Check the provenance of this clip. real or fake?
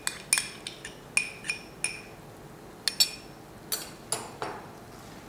real